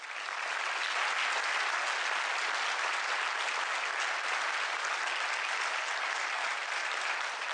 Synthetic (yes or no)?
no